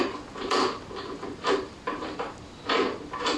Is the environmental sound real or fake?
real